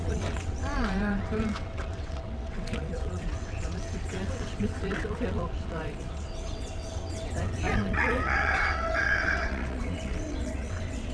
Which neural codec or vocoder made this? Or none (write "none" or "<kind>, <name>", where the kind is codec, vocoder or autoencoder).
vocoder, WaveNeXt